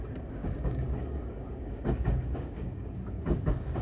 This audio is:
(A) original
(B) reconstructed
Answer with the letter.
B